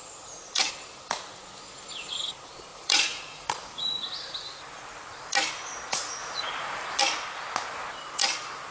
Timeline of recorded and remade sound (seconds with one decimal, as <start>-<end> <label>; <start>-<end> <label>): 0.0-0.7 remade; 0.7-2.7 recorded; 2.7-3.7 remade; 3.7-6.2 recorded; 6.2-7.0 remade; 7.0-8.7 recorded